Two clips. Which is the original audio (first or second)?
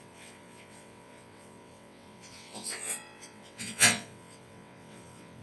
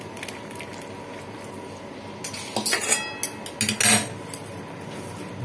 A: second